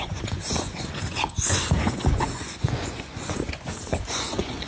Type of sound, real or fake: fake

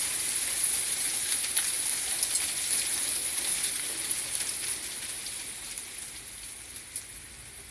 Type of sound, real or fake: real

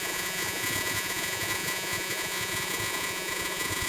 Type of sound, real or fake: fake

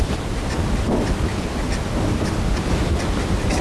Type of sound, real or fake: real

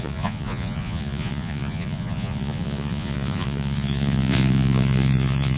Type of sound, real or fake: fake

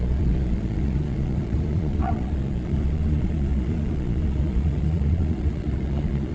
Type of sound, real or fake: fake